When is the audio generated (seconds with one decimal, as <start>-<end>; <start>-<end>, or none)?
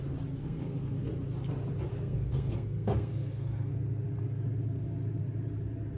0.4-1.1; 1.9-3.7